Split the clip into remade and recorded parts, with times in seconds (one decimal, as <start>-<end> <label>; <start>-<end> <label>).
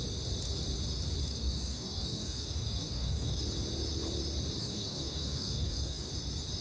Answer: 0.0-1.2 recorded; 1.2-3.4 remade; 3.4-4.6 recorded; 4.6-6.1 remade; 6.1-6.6 recorded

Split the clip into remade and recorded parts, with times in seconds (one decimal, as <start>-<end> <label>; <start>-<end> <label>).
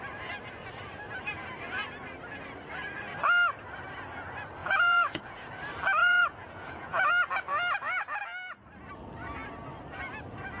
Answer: 0.0-4.6 recorded; 4.6-5.5 remade; 5.5-6.0 recorded; 6.0-7.1 remade; 7.1-10.6 recorded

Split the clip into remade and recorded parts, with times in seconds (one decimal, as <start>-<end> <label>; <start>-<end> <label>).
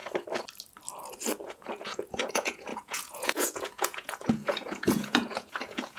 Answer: 0.0-1.4 recorded; 1.4-6.0 remade